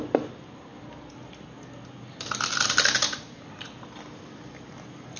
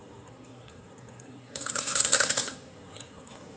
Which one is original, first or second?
first